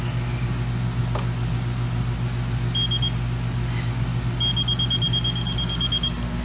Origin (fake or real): real